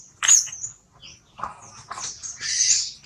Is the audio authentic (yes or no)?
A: yes